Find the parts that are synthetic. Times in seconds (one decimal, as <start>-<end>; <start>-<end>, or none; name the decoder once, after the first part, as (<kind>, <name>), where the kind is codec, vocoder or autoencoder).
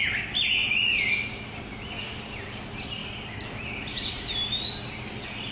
none